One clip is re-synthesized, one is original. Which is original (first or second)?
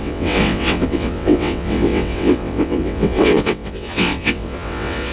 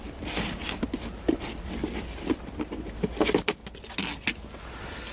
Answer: second